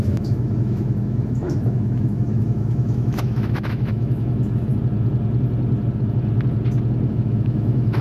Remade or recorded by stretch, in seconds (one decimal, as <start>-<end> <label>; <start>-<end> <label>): 0.0-4.7 remade; 4.7-7.1 recorded; 7.1-8.0 remade